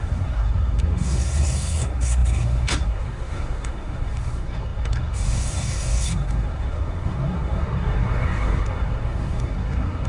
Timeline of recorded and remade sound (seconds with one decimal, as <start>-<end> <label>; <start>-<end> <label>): 0.0-10.1 remade